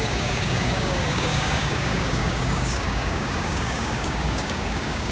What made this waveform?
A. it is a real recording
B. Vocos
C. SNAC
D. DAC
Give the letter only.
D